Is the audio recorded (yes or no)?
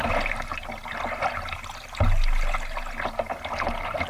yes